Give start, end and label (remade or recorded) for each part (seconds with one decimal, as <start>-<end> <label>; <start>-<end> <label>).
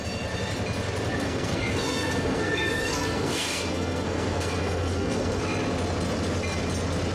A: 0.0-1.1 recorded; 1.1-5.4 remade; 5.4-7.1 recorded